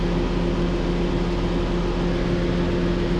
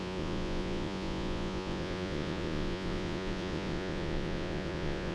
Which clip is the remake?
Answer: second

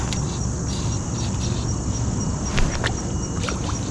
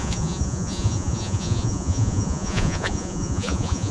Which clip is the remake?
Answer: second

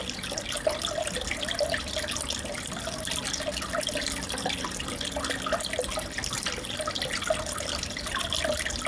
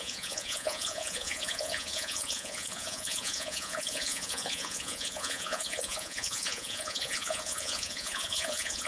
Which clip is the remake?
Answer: second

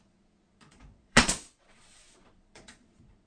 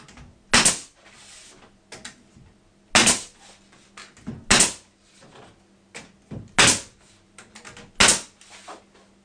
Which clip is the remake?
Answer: first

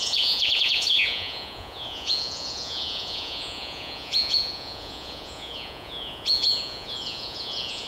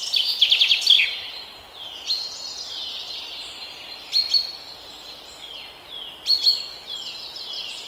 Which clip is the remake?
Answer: first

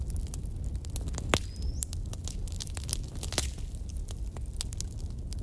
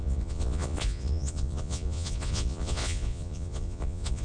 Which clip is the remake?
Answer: second